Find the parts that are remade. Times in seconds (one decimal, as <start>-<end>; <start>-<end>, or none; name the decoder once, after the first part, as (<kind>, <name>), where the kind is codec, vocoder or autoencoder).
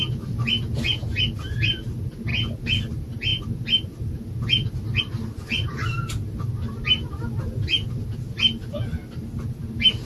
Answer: none